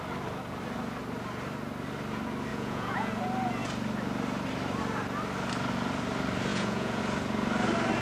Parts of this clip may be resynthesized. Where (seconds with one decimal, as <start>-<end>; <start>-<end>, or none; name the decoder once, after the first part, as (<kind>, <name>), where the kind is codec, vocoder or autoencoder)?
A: 2.5-3.1 (vocoder, Vocos); 6.5-7.0